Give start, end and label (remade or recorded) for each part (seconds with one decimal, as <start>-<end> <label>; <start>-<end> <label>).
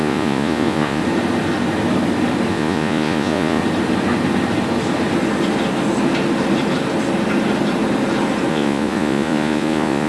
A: 0.0-1.0 remade; 1.0-2.5 recorded; 2.5-3.6 remade; 3.6-8.5 recorded; 8.5-10.1 remade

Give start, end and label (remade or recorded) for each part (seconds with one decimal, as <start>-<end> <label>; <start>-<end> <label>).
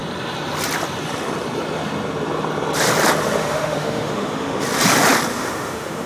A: 0.0-3.4 recorded; 3.4-4.6 remade; 4.6-5.3 recorded; 5.3-6.1 remade